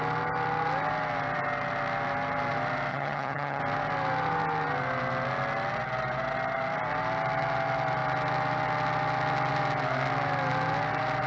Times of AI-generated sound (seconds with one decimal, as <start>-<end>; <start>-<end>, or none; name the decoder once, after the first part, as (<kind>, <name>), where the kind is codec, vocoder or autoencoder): 2.9-3.6 (vocoder, HiFi-GAN)